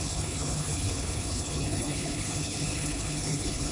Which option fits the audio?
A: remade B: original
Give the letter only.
A